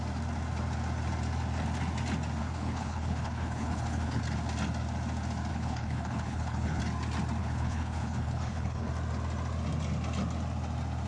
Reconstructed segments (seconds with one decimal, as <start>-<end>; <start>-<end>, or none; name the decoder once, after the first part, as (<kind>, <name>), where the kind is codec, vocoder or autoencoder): 2.4-4.2 (codec, HILCodec); 5.5-6.8; 7.4-8.9